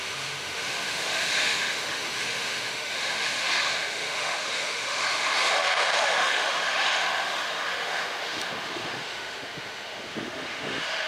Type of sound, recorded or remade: remade